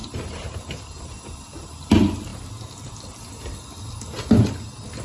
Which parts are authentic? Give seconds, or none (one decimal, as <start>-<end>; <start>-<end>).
1.7-5.0